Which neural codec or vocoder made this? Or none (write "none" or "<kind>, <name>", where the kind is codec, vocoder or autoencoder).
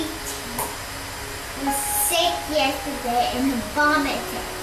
none